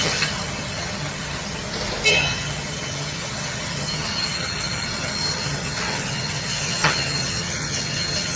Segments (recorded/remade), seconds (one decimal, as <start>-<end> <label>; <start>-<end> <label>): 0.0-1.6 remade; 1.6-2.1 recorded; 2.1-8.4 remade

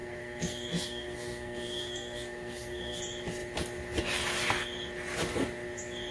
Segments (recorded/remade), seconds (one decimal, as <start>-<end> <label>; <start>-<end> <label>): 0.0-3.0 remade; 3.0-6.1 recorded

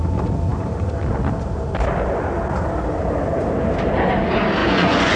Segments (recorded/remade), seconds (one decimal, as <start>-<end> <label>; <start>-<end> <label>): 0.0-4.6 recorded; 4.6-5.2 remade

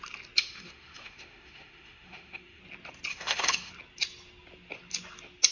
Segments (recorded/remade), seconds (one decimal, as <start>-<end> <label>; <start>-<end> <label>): 0.0-0.4 recorded; 0.4-2.6 remade; 2.6-3.1 recorded; 3.1-3.7 remade; 3.7-5.5 recorded

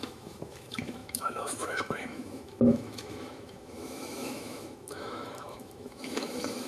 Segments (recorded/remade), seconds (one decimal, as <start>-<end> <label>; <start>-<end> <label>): 0.0-6.7 remade